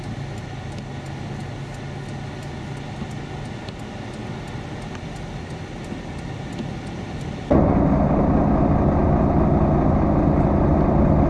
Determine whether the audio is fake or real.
real